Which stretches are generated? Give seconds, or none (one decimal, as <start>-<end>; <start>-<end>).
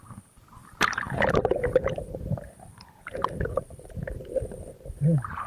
0.0-5.5